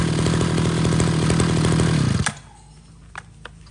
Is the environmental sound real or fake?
real